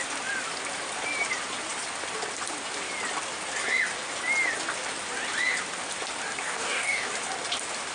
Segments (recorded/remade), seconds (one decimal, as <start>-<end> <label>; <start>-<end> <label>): 0.0-6.4 recorded; 6.4-7.1 remade; 7.1-7.9 recorded